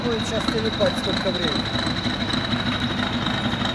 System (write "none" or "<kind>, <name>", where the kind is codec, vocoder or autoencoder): none